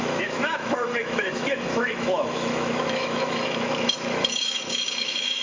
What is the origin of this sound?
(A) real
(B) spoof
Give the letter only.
B